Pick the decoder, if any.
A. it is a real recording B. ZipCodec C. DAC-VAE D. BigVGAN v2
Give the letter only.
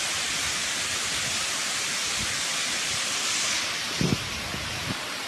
A